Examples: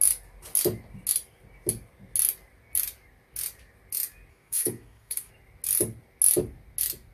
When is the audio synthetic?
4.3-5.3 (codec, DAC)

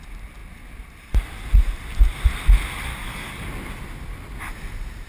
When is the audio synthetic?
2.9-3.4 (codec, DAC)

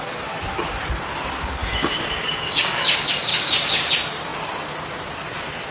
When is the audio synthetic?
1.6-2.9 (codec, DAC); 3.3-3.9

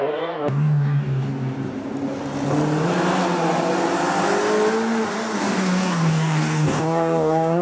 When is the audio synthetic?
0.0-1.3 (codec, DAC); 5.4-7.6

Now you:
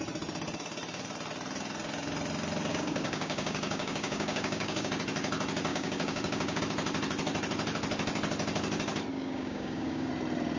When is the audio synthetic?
2.7-4.9 (codec, DAC); 5.7-6.6; 9.1-10.1

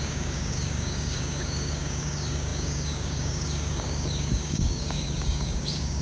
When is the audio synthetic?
0.0-6.0 (codec, DAC)